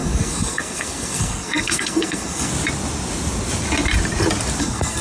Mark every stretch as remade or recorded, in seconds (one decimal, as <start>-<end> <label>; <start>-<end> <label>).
0.0-2.5 remade; 2.5-4.6 recorded; 4.6-5.0 remade